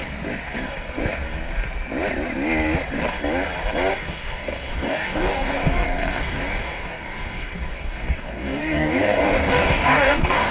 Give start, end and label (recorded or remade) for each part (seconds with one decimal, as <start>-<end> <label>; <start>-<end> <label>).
0.0-3.9 recorded; 3.9-10.5 remade